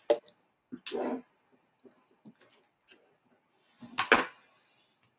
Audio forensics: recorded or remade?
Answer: recorded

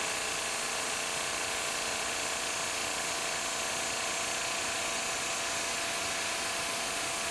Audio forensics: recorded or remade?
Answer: recorded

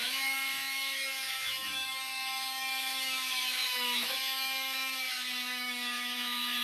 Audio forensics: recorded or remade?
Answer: remade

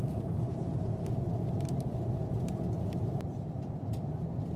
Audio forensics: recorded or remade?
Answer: recorded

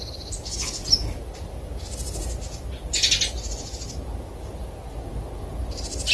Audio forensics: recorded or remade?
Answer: recorded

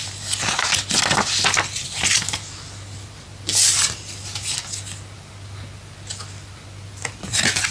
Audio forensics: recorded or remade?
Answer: recorded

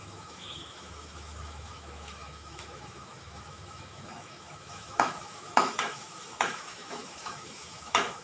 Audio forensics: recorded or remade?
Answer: remade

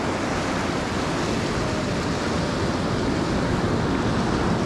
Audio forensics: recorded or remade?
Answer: recorded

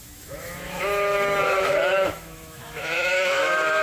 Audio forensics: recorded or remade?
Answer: remade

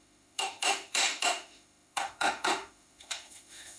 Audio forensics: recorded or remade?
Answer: remade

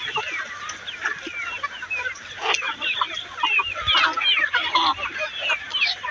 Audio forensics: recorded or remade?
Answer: recorded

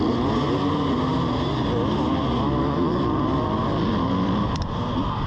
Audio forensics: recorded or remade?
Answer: recorded